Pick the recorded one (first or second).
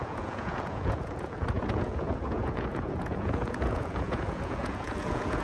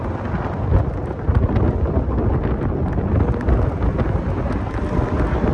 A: second